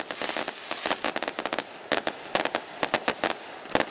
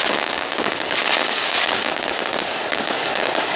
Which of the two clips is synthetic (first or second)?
second